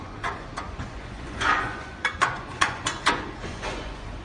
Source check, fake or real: fake